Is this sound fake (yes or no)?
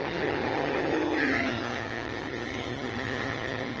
yes